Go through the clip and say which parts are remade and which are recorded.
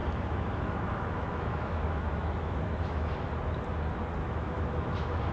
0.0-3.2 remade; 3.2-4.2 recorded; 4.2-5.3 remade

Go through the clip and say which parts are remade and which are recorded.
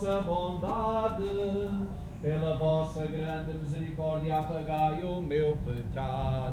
0.0-6.5 remade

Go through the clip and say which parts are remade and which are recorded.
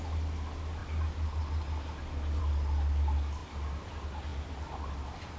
0.0-5.4 recorded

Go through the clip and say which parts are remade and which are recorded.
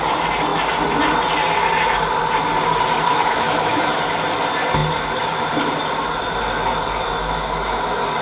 0.0-3.1 recorded; 3.1-4.0 remade; 4.0-8.2 recorded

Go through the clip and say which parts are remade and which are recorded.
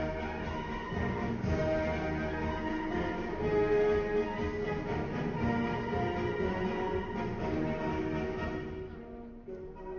0.0-10.0 recorded